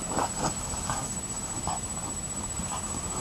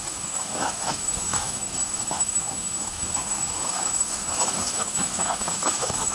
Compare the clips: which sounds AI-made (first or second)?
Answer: second